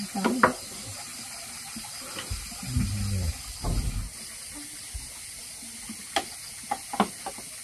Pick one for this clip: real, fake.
real